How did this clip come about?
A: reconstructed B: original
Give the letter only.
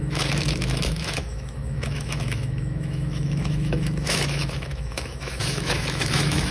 A